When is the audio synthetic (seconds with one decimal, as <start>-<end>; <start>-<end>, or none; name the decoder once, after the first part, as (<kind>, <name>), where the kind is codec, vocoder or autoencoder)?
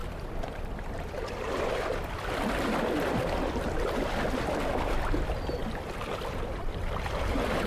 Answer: none